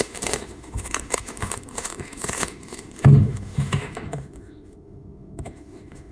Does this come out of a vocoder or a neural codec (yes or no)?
yes